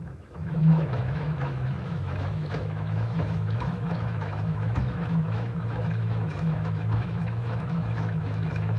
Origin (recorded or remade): remade